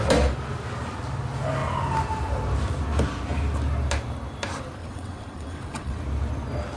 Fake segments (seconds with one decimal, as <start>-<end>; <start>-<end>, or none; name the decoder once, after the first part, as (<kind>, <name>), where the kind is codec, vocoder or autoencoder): 4.8-6.0 (vocoder, WaveNeXt)